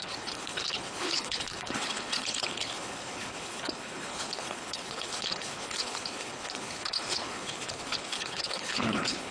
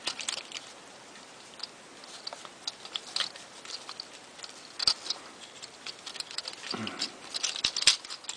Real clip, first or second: second